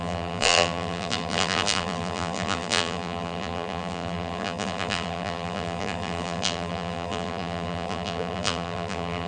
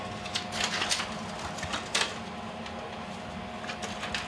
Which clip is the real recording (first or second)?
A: second